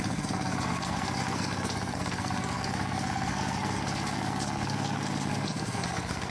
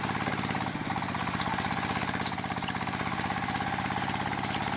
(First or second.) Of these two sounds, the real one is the second